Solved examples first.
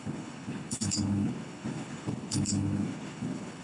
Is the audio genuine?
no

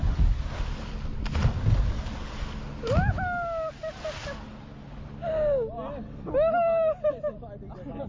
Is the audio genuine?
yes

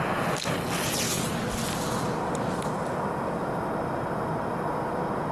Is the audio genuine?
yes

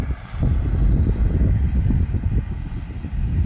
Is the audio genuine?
yes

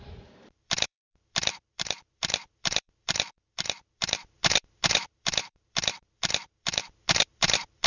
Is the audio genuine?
no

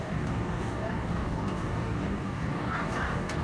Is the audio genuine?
no